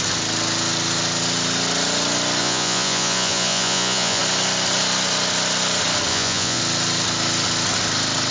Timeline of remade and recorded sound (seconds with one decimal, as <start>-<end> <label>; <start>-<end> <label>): 0.0-2.4 recorded; 2.4-4.2 remade; 4.2-6.1 recorded; 6.1-6.6 remade; 6.6-8.3 recorded